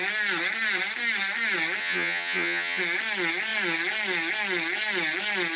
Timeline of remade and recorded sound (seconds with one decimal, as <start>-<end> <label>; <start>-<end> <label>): 0.0-1.8 recorded; 1.8-2.8 remade; 2.8-5.6 recorded